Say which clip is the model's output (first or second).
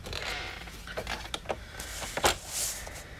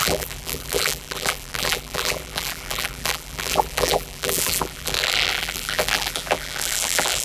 second